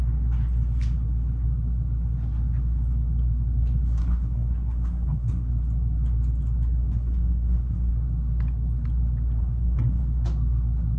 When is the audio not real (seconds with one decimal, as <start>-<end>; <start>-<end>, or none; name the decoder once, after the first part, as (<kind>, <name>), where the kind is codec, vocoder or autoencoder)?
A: 4.0-5.5 (codec, SNAC); 6.8-7.9; 9.4-10.0